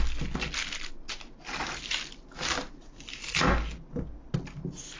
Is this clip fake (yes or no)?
no